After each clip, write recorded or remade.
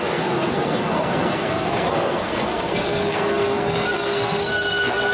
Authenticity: remade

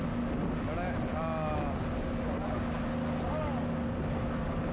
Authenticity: recorded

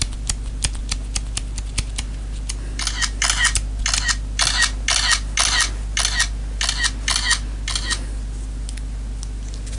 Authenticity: recorded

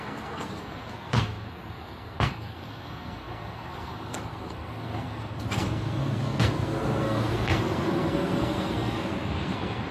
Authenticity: remade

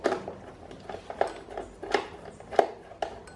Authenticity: recorded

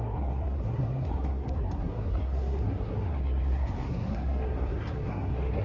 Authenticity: remade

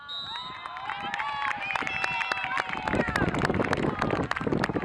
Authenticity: recorded